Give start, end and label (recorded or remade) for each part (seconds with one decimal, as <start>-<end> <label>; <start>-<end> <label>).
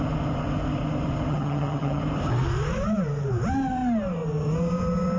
0.0-1.3 recorded; 1.3-2.0 remade; 2.0-5.2 recorded